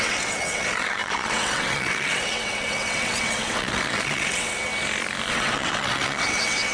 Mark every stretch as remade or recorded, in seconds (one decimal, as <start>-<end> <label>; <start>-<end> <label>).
0.0-4.7 remade; 4.7-5.3 recorded; 5.3-6.7 remade